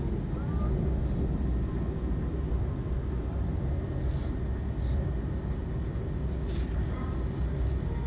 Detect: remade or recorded recorded